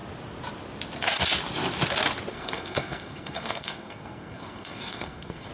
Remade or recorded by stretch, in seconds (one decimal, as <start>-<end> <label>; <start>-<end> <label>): 0.0-2.3 recorded; 2.3-5.5 remade